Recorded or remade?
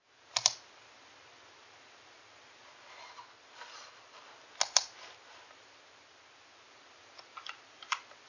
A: recorded